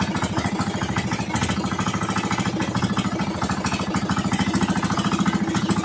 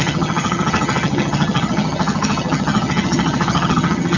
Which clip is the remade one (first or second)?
second